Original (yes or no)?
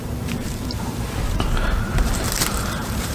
no